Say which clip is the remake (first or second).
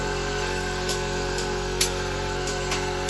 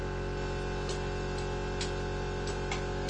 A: first